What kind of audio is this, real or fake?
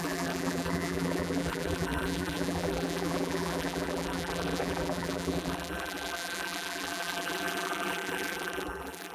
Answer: fake